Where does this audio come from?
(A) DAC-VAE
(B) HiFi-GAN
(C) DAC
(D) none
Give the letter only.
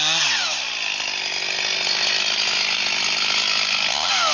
D